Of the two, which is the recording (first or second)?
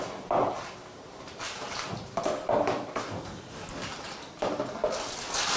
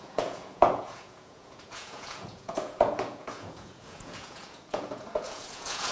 first